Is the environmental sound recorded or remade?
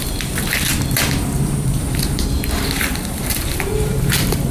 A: remade